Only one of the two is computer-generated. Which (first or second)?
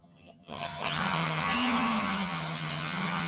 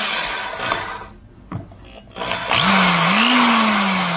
first